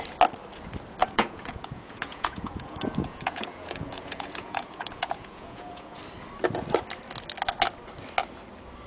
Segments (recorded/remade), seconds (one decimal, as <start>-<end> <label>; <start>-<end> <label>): 0.0-1.0 recorded; 1.0-6.0 remade; 6.0-8.9 recorded